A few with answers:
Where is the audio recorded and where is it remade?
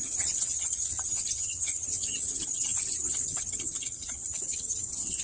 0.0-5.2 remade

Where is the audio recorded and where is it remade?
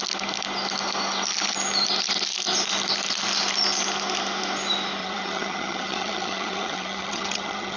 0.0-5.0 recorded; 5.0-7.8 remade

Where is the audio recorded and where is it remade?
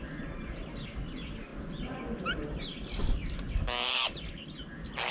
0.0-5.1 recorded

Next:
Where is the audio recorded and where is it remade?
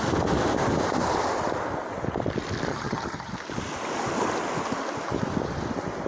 0.0-2.7 recorded; 2.7-3.3 remade; 3.3-6.1 recorded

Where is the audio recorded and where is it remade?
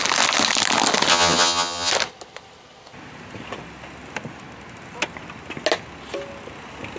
0.0-1.1 recorded; 1.1-1.9 remade; 1.9-7.0 recorded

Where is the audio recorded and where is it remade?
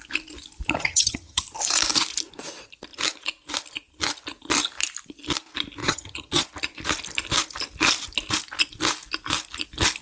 0.0-0.8 recorded; 0.8-1.4 remade; 1.4-5.8 recorded; 5.8-6.4 remade; 6.4-10.0 recorded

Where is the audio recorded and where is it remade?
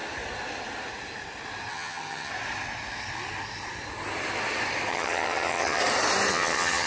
0.0-1.7 recorded; 1.7-2.3 remade; 2.3-4.9 recorded; 4.9-5.8 remade; 5.8-6.3 recorded; 6.3-6.9 remade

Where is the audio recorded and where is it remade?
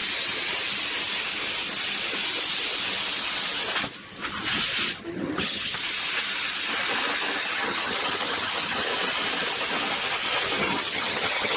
0.0-4.9 recorded; 4.9-5.7 remade; 5.7-7.4 recorded; 7.4-8.9 remade; 8.9-10.6 recorded; 10.6-11.6 remade